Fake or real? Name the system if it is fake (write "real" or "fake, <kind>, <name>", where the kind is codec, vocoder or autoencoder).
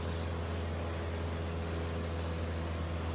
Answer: real